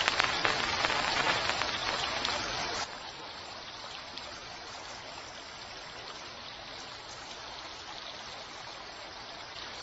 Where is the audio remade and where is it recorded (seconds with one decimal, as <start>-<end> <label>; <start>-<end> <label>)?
0.0-9.8 recorded